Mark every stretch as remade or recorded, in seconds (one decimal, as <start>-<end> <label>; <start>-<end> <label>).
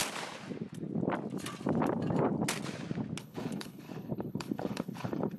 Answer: 0.0-3.2 recorded; 3.2-5.4 remade